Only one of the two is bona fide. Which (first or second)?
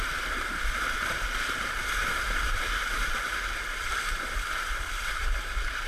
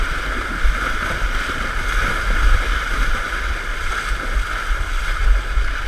second